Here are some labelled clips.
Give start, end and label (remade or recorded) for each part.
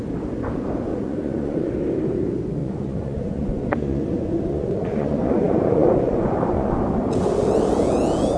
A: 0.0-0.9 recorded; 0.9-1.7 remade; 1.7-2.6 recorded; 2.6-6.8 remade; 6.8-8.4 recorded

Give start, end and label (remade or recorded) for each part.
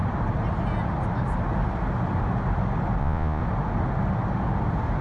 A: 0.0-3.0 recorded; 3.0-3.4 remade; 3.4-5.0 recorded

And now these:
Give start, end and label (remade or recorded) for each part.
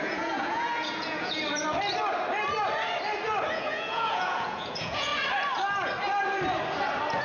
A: 0.0-1.4 remade; 1.4-3.5 recorded; 3.5-5.1 remade; 5.1-7.2 recorded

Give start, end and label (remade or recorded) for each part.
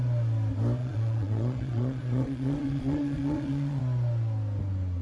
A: 0.0-0.8 recorded; 0.8-3.8 remade; 3.8-5.0 recorded